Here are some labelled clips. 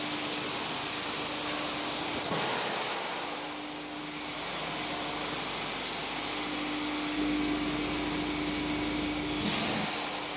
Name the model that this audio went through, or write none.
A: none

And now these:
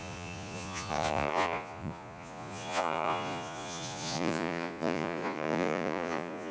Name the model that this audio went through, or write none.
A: vocoder, Vocos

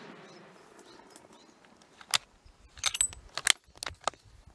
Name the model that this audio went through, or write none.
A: none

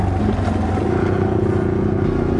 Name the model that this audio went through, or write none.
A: none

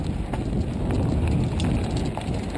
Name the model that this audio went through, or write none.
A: none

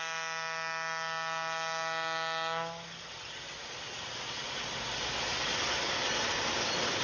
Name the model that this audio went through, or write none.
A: none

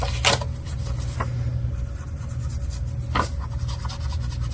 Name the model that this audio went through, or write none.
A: none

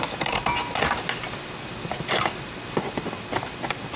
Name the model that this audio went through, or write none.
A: none